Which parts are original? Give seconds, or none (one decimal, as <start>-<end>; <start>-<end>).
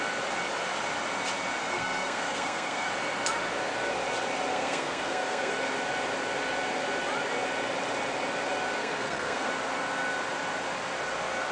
0.0-1.6; 2.9-4.5; 5.5-8.8; 9.5-11.5